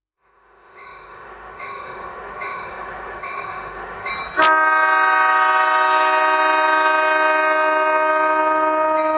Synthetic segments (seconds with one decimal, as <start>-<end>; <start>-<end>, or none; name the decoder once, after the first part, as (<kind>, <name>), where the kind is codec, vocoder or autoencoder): 0.0-4.1 (autoencoder, DAC-VAE)